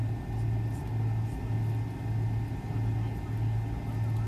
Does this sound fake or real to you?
real